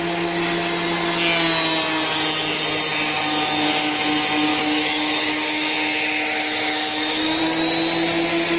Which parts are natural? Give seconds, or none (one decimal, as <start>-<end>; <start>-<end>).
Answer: 0.0-4.5; 7.4-8.6